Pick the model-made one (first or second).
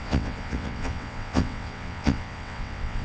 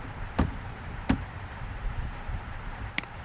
first